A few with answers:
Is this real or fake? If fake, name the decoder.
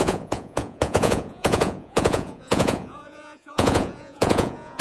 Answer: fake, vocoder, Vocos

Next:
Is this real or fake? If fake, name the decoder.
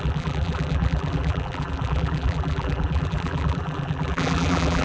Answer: fake, vocoder, BigVGAN v2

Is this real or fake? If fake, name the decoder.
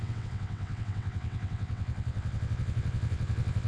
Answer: fake, vocoder, WaveNeXt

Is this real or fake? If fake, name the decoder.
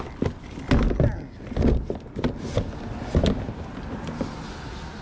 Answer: real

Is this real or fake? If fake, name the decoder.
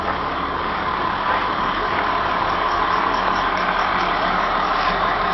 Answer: fake, codec, DAC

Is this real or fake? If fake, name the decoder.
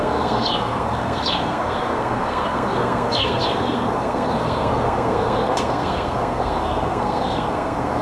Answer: fake, codec, SNAC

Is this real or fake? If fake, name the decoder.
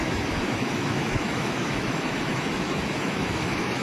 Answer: fake, autoencoder, DAC-VAE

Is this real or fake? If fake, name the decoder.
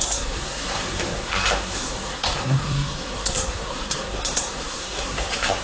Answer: fake, codec, SNAC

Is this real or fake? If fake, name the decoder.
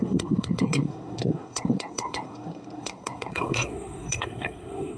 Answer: fake, codec, SNAC